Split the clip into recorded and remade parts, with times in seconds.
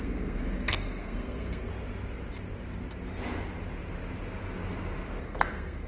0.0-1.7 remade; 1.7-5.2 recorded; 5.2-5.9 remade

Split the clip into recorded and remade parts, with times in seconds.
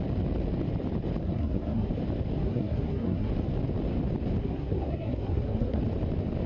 0.0-1.2 recorded; 1.2-1.9 remade; 1.9-2.4 recorded; 2.4-3.3 remade; 3.3-4.4 recorded; 4.4-5.8 remade; 5.8-6.5 recorded